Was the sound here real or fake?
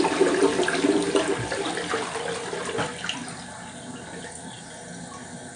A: real